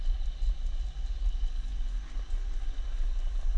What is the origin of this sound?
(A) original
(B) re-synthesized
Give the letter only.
A